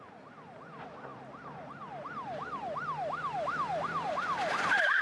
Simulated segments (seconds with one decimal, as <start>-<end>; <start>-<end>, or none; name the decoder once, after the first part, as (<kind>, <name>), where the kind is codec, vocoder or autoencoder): none